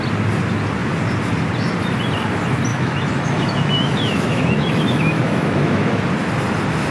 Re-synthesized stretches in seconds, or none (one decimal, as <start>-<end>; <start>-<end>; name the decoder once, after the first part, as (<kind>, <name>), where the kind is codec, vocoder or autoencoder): 2.7-6.0 (autoencoder, DAC-VAE)